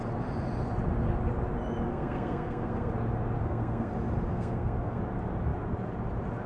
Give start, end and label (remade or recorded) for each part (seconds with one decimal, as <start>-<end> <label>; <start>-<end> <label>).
0.0-1.9 recorded; 1.9-2.9 remade; 2.9-3.4 recorded; 3.4-3.9 remade; 3.9-4.3 recorded; 4.3-5.0 remade; 5.0-6.5 recorded